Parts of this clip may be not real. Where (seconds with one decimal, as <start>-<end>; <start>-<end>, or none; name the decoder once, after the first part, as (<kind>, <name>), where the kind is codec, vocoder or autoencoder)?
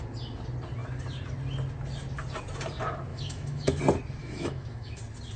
3.1-3.8 (autoencoder, DAC-VAE); 4.2-5.0